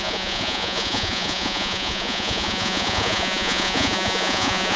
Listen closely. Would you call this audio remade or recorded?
remade